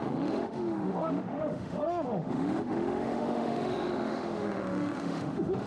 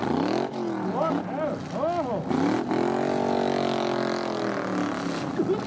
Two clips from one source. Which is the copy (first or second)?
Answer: first